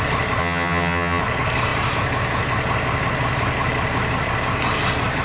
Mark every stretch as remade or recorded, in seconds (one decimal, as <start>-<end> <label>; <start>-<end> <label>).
0.0-0.4 recorded; 0.4-1.2 remade; 1.2-5.2 recorded